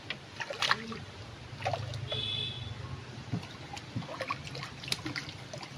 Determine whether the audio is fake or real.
real